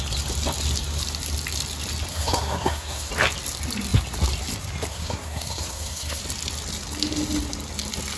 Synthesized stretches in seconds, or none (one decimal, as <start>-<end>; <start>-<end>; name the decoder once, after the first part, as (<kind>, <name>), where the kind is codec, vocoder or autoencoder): 2.1-3.1 (codec, SNAC); 4.9-6.2